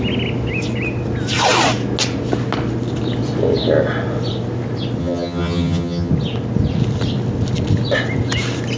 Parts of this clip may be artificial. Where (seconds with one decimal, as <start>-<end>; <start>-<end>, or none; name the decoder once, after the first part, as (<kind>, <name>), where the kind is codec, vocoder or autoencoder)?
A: 5.0-6.1 (vocoder, HiFi-GAN)